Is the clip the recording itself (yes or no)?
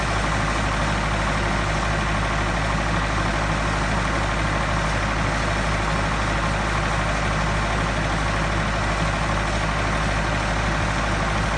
yes